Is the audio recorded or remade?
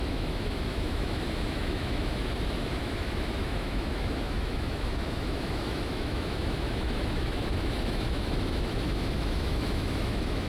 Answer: remade